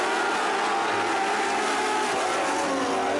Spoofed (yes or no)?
no